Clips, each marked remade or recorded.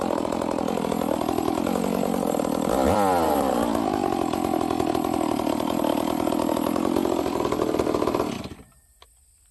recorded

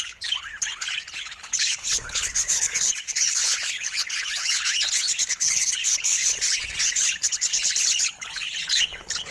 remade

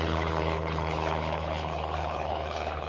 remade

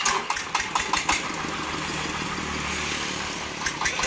recorded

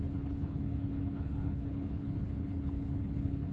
remade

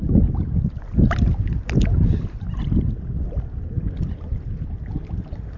recorded